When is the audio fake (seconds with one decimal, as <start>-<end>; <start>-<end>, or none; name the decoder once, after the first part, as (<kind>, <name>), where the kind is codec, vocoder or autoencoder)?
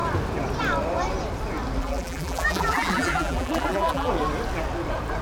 1.8-4.1 (vocoder, BigVGAN v2)